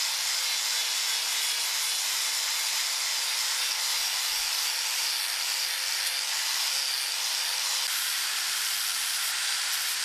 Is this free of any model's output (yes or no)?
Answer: yes